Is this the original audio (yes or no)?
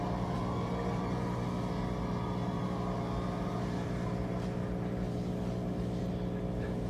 yes